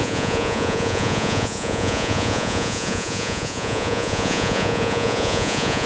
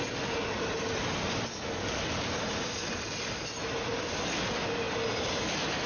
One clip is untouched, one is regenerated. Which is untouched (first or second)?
second